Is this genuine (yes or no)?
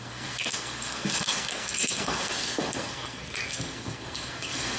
no